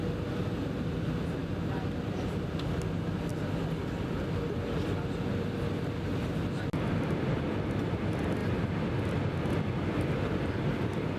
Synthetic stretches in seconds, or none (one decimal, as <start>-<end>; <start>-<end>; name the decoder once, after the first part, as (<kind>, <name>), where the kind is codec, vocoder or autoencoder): none